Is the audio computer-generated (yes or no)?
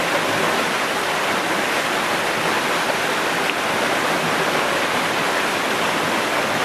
no